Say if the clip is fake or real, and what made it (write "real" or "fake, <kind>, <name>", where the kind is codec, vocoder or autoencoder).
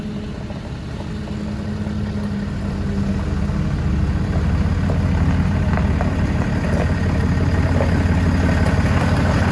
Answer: real